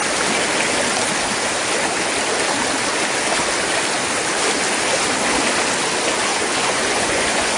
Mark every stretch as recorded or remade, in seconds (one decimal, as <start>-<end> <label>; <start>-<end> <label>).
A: 0.0-6.3 recorded; 6.3-7.6 remade